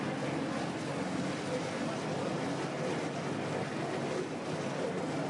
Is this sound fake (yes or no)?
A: no